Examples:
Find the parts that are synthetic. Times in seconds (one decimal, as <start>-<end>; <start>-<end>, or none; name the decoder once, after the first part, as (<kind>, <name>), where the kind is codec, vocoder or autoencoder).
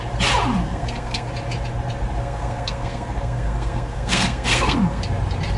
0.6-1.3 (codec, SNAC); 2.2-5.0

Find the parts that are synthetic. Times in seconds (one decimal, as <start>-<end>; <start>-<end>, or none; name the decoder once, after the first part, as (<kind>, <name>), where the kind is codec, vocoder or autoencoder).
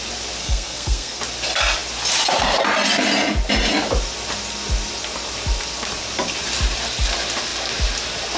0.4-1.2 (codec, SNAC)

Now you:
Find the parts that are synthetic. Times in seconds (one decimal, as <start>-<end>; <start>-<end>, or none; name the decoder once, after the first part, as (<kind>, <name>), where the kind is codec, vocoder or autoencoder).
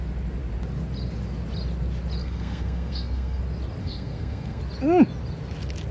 2.2-3.4 (codec, SNAC); 3.8-4.6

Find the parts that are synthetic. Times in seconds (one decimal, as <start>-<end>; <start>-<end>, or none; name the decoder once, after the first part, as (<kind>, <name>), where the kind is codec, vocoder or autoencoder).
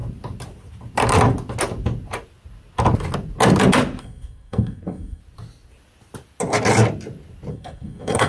4.0-5.2 (codec, SNAC); 7.5-8.3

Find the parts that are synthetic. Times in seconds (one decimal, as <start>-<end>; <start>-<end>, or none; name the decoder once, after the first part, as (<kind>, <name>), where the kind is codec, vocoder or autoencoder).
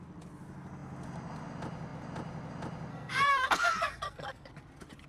2.9-4.5 (codec, SNAC)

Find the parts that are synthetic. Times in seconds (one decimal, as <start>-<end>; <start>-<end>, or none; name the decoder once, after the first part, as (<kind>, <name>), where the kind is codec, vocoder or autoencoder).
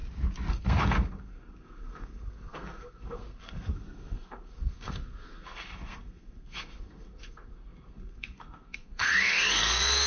0.5-10.1 (codec, SNAC)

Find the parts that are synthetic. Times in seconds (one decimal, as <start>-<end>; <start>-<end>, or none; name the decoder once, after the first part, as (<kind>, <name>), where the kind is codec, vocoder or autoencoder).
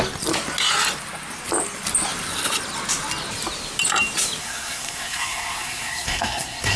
4.4-6.8 (codec, SNAC)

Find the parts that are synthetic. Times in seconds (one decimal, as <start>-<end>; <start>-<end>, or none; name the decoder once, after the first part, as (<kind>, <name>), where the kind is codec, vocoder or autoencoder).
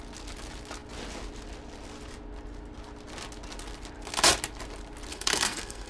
5.1-5.9 (codec, SNAC)